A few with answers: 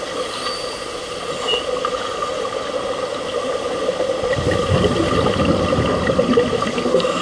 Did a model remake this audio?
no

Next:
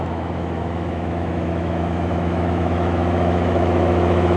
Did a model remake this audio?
yes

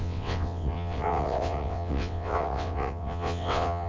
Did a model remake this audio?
yes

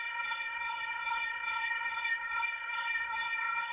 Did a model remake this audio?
yes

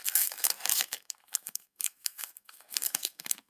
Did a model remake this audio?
yes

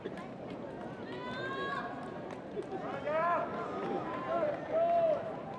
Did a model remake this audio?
no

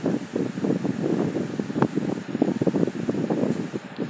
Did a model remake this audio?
no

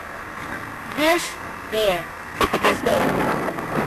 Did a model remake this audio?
yes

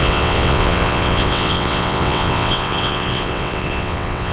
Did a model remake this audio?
yes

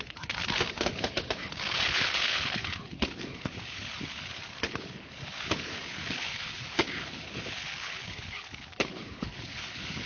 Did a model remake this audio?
yes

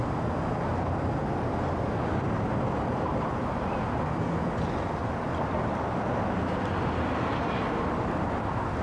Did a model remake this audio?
no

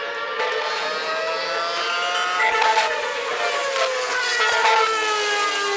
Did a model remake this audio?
no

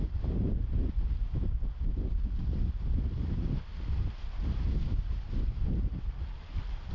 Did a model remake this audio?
no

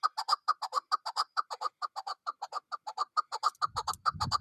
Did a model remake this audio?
no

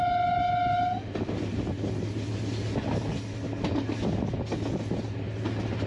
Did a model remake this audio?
no